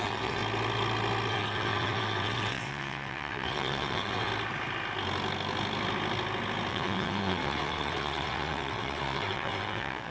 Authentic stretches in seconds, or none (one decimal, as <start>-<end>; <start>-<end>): 0.4-1.3; 4.3-6.7